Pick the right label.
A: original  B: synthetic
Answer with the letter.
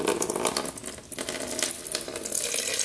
A